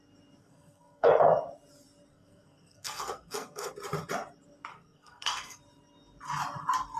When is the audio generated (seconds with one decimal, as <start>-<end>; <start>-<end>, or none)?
0.4-1.1; 2.1-3.7; 4.7-5.6